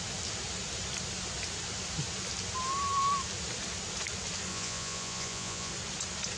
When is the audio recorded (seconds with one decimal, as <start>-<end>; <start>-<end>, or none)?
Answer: 0.0-4.5; 5.7-6.4